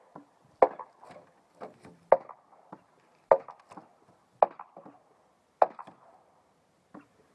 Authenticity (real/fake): real